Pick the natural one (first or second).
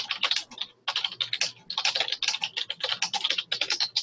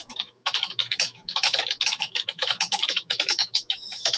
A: first